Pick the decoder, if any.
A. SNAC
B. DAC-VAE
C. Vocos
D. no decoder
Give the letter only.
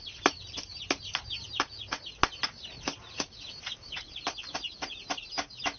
D